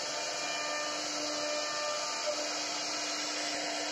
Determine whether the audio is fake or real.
real